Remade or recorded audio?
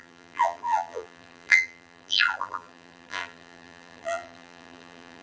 remade